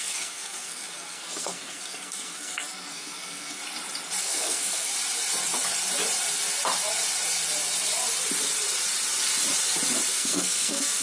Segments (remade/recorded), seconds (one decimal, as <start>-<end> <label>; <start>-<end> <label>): 0.0-3.6 remade; 3.6-4.2 recorded; 4.2-4.9 remade; 4.9-10.1 recorded; 10.1-11.0 remade